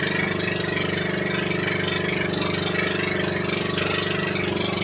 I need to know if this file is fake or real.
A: real